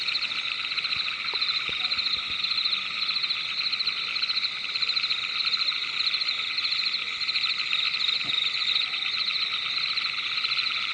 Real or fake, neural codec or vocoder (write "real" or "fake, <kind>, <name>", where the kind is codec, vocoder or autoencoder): real